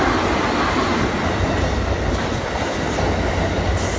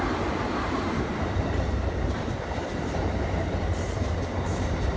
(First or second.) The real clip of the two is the first